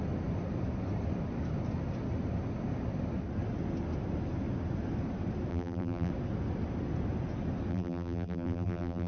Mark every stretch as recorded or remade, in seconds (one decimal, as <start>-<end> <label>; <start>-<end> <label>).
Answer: 0.0-5.5 recorded; 5.5-6.1 remade; 6.1-7.7 recorded; 7.7-9.1 remade